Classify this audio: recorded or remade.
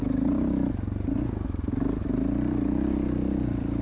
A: remade